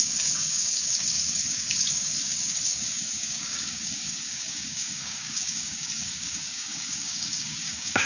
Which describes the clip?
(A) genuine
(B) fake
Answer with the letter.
B